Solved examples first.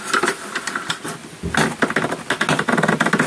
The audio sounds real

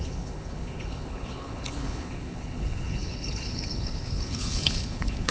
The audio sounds fake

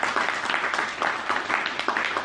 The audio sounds fake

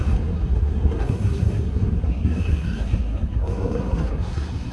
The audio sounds fake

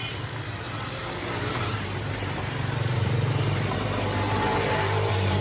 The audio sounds fake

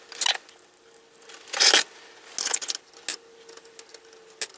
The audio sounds real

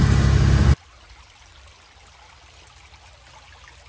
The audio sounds real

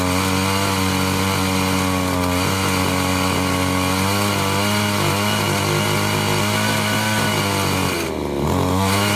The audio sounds real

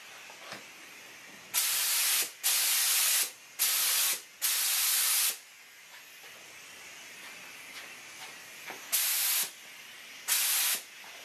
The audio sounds real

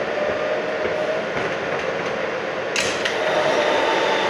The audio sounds real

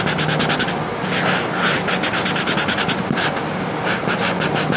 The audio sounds real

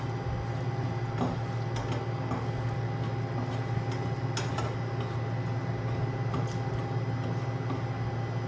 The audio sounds real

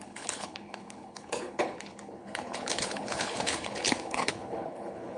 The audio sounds fake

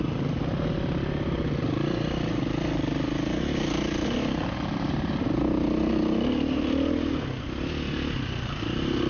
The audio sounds real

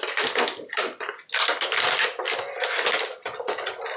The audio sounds real